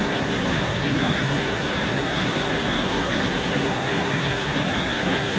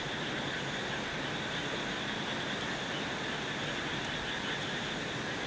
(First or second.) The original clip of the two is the second